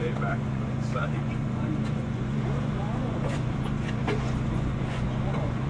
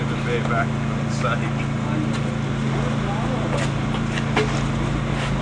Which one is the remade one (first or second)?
first